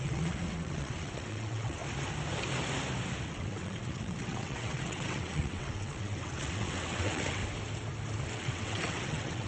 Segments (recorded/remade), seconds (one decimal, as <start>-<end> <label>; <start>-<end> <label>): 0.0-1.8 remade; 1.8-3.3 recorded; 3.3-7.4 remade; 7.4-8.3 recorded; 8.3-9.5 remade